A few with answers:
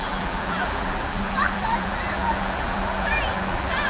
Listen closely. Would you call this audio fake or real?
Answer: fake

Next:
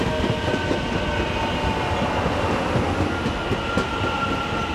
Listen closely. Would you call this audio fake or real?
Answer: real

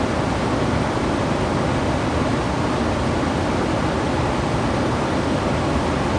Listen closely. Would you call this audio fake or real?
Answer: real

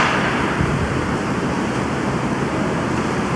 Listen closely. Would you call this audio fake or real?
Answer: fake